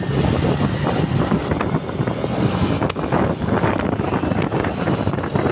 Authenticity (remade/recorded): recorded